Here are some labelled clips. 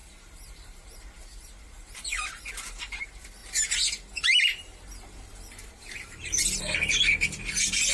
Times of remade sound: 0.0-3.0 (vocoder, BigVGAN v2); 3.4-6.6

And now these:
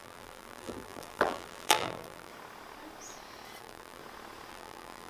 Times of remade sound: 0.0-2.3 (vocoder, BigVGAN v2); 3.6-4.0; 4.5-5.1

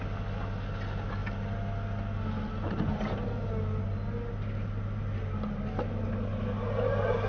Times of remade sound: none